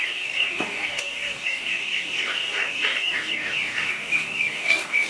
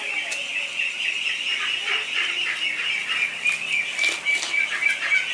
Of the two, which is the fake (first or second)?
first